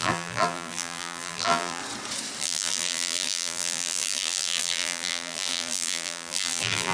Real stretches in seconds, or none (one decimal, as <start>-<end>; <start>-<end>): 1.8-2.4